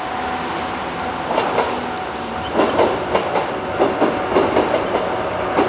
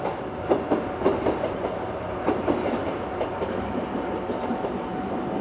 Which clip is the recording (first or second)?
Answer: first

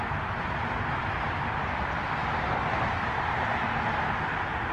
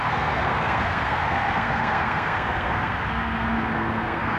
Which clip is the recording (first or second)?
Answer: first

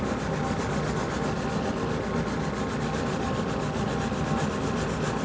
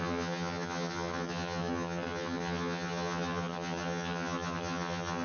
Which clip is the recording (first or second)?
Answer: first